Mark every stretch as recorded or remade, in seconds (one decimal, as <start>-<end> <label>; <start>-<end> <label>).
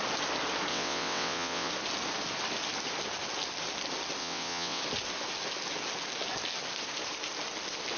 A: 0.0-0.7 recorded; 0.7-1.7 remade; 1.7-4.2 recorded; 4.2-4.8 remade; 4.8-8.0 recorded